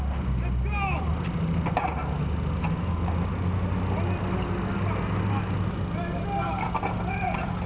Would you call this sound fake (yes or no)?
no